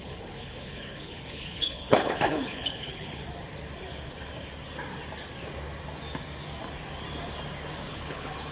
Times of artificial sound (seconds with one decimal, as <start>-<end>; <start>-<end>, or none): 0.0-3.2; 7.9-8.5